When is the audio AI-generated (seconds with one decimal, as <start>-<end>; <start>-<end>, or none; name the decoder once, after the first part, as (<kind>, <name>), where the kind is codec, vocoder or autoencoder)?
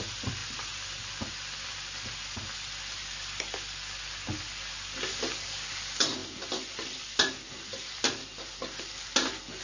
none